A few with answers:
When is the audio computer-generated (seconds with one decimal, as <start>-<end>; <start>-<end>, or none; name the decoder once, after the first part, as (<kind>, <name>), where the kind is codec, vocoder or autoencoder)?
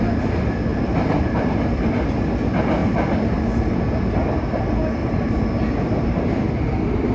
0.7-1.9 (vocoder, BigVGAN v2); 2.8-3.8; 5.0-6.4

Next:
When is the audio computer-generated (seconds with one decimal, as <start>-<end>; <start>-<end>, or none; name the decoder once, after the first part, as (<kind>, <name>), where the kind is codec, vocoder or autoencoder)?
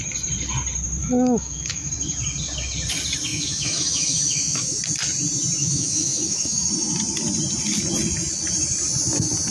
1.0-1.9 (autoencoder, DAC-VAE); 3.3-4.8; 5.6-6.7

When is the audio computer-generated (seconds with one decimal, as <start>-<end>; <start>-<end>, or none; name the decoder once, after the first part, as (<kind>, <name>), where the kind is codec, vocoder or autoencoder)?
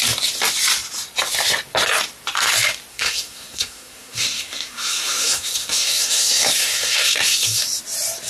2.9-7.6 (codec, SNAC)